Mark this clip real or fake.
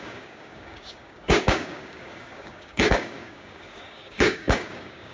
fake